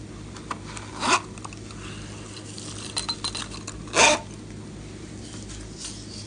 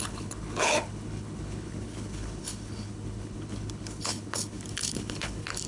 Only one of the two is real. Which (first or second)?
first